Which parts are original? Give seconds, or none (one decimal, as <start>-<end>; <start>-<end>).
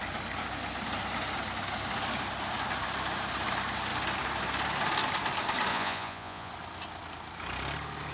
0.0-5.7; 6.5-8.1